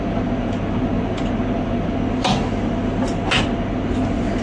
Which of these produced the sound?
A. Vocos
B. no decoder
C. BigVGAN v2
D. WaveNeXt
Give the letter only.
B